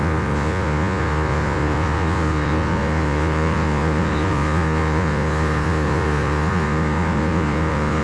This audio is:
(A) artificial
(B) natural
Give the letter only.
A